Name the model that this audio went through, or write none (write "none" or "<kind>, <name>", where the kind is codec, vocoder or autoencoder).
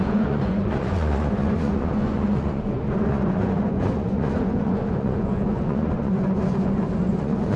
vocoder, Vocos